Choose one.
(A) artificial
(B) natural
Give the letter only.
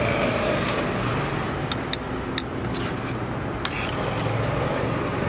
B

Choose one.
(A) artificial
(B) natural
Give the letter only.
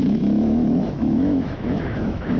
A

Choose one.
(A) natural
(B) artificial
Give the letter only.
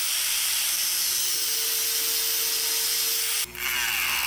A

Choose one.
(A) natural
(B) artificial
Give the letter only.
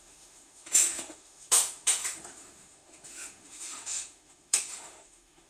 B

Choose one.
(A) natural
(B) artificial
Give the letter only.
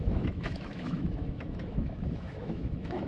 B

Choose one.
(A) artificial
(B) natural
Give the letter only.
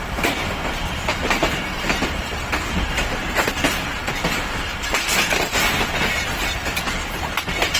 B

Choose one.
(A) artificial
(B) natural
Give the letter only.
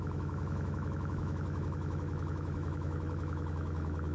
A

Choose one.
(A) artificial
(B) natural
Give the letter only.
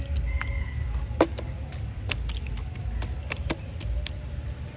B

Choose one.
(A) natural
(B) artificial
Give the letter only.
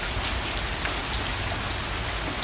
A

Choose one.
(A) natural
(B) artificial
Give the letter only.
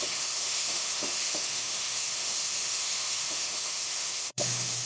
B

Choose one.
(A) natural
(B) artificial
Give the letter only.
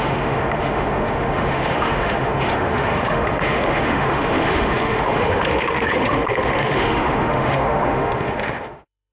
B